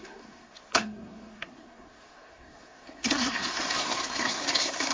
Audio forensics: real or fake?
fake